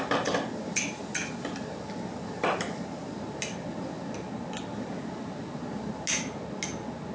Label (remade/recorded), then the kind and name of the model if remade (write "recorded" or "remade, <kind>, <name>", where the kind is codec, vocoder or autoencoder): recorded